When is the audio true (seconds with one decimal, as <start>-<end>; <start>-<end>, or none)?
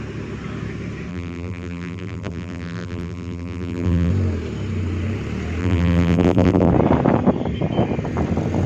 0.0-1.1; 4.1-5.6; 6.7-8.7